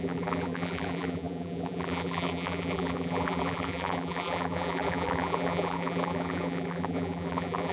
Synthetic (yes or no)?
yes